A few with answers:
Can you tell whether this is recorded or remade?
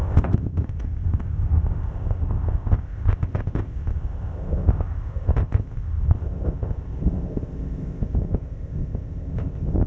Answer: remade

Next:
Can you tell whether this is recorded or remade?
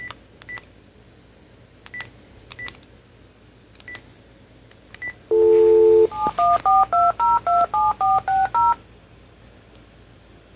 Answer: recorded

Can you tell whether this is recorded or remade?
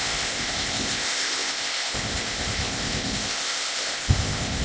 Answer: remade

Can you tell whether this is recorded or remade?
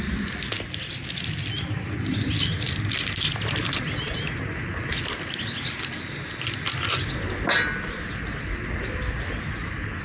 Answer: recorded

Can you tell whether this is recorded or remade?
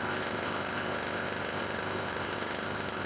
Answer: remade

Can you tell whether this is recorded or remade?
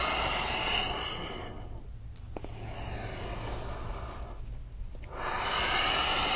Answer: recorded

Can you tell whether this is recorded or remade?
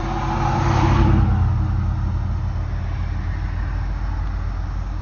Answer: recorded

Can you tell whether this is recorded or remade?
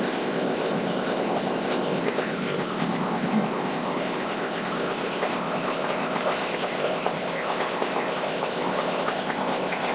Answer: remade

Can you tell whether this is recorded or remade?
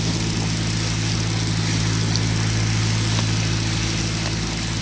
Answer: recorded